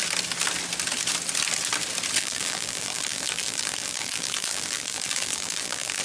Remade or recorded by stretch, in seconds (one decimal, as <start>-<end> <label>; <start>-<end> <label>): 0.0-2.2 recorded; 2.2-6.0 remade